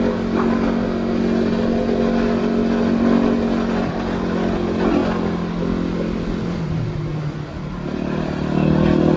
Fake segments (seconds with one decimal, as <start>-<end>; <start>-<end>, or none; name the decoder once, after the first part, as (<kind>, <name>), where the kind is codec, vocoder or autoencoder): none